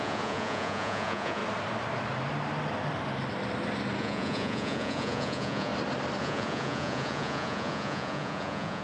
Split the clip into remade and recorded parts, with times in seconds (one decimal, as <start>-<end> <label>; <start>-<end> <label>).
0.0-1.4 remade; 1.4-4.0 recorded; 4.0-5.7 remade; 5.7-6.2 recorded; 6.2-8.8 remade